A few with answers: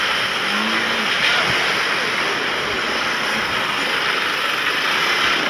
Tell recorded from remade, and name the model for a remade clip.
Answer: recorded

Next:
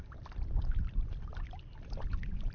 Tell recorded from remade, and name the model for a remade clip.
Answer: recorded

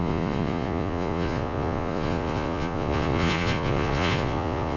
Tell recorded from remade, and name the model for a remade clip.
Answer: remade, vocoder, Vocos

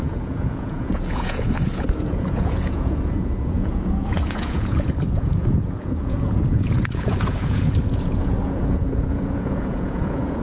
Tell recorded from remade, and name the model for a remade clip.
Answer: remade, vocoder, Vocos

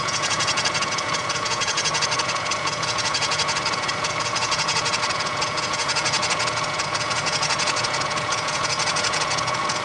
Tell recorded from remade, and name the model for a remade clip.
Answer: remade, vocoder, Vocos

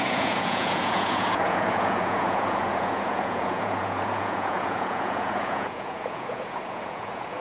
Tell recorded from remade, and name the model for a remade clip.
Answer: remade, vocoder, Vocos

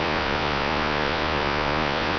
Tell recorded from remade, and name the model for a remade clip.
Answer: remade, vocoder, Vocos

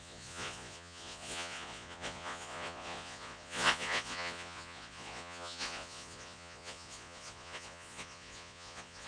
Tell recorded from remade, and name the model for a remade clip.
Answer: remade, vocoder, Vocos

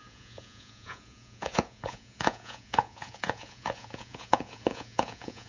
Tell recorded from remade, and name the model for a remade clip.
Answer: remade, vocoder, Vocos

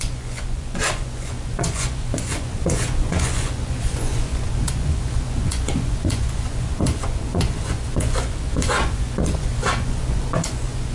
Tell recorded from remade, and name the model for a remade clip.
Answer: remade, vocoder, Vocos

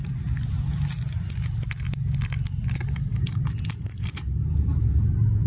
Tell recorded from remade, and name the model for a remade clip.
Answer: recorded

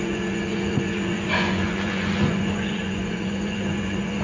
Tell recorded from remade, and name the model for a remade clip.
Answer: remade, vocoder, Vocos